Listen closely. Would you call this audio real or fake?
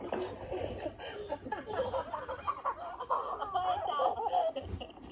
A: fake